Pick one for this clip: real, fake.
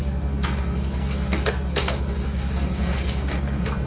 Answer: fake